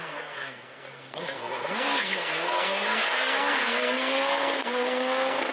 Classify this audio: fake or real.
fake